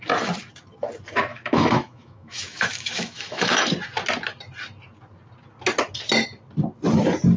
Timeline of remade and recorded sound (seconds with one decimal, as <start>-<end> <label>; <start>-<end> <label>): 0.0-1.3 recorded; 1.3-3.6 remade; 3.6-7.4 recorded